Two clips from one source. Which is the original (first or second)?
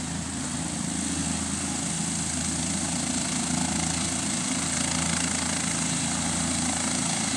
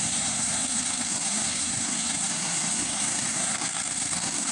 first